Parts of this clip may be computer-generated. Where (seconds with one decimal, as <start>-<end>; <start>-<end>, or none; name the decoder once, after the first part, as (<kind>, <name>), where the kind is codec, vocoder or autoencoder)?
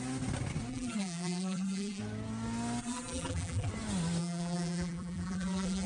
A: 0.7-2.0 (vocoder, BigVGAN v2); 2.8-3.7; 4.2-5.9